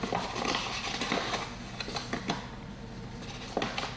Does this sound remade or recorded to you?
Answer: recorded